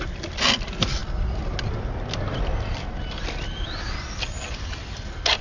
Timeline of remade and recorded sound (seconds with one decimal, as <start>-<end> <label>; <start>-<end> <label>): 0.0-5.4 recorded